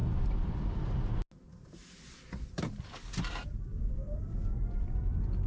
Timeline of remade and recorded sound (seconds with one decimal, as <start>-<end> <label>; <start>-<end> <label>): 0.0-0.8 remade; 0.8-1.8 recorded; 1.8-5.1 remade; 5.1-5.5 recorded

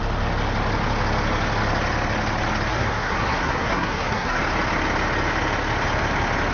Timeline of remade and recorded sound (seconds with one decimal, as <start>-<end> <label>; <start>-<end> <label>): 0.0-2.7 recorded; 2.7-4.4 remade; 4.4-6.5 recorded

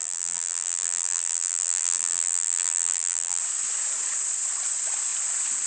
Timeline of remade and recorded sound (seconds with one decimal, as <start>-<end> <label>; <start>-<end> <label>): 0.0-3.4 remade; 3.4-5.7 recorded

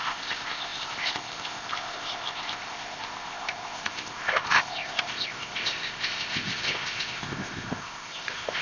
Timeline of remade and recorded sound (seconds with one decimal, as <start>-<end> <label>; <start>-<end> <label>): 0.0-8.6 remade

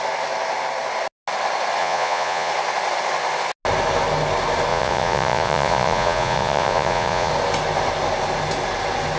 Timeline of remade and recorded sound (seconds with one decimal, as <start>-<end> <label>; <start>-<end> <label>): 0.0-1.8 recorded; 1.8-2.5 remade; 2.5-4.7 recorded; 4.7-7.3 remade; 7.3-9.2 recorded

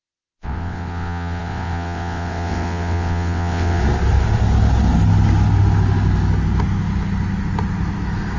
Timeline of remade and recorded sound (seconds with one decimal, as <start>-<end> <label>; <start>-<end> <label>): 0.0-3.8 remade; 3.8-8.4 recorded

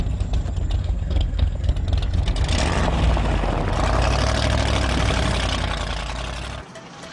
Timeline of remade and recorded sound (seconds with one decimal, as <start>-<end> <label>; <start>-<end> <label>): 0.0-0.8 recorded; 0.8-1.7 remade; 1.7-7.1 recorded